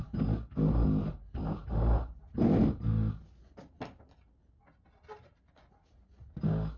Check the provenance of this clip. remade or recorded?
recorded